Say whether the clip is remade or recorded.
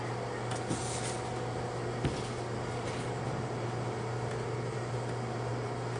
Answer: recorded